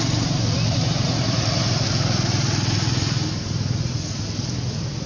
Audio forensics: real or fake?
real